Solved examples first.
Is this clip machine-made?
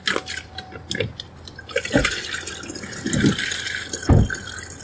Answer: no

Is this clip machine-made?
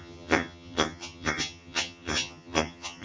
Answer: yes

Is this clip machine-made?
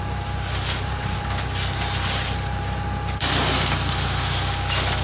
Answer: no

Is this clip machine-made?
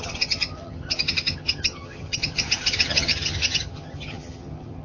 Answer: yes